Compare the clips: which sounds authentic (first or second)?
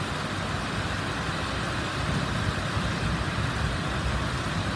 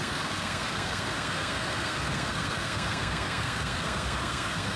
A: first